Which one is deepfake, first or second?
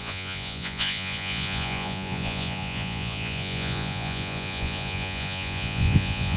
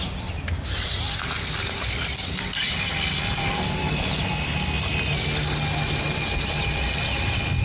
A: first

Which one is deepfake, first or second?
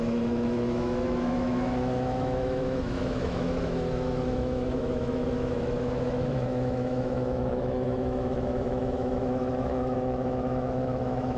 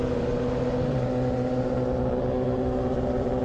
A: first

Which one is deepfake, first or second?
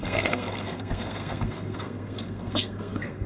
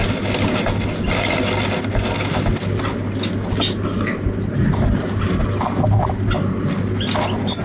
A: first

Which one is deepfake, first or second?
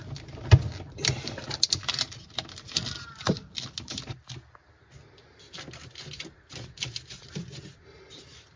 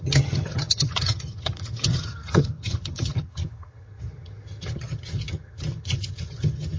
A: second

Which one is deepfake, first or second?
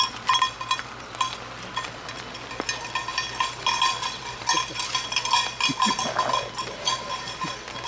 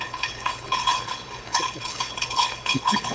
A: second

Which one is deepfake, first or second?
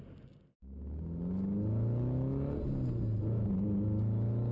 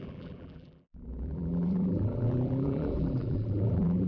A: second